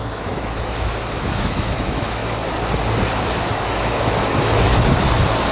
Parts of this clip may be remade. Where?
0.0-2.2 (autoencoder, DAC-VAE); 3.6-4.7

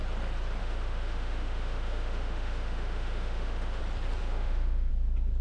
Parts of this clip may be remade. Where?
0.6-3.8 (autoencoder, DAC-VAE); 4.2-4.9